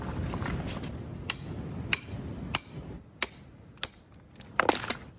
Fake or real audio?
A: real